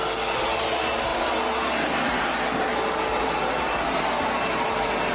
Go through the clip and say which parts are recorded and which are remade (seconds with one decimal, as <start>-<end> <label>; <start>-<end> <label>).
0.0-5.1 recorded